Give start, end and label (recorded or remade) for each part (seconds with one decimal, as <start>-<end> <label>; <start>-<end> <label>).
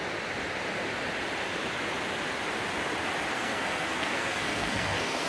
0.0-3.3 recorded; 3.3-5.3 remade